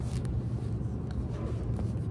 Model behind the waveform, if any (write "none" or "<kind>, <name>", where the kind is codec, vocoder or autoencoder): none